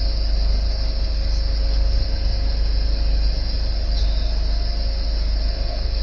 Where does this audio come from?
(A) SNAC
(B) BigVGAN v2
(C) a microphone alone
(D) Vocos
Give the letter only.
C